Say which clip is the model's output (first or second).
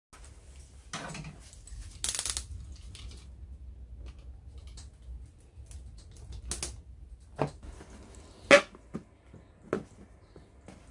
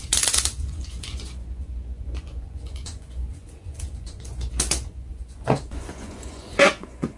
second